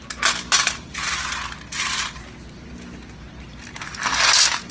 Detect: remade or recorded recorded